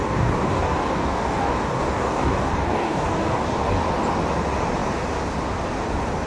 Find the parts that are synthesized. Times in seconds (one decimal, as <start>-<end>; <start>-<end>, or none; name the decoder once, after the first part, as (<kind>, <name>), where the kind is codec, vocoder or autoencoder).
0.0-3.8 (codec, DAC)